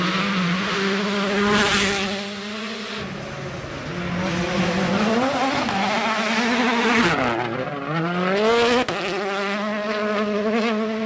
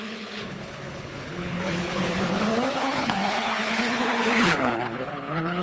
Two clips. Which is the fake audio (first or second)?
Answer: second